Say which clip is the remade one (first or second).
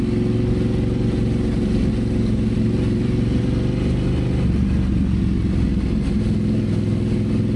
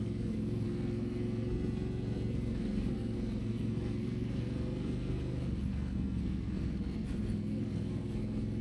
second